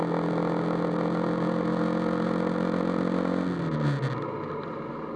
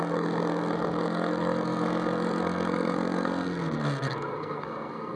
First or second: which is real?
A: first